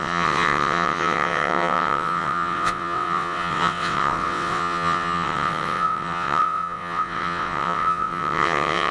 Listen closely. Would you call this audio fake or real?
fake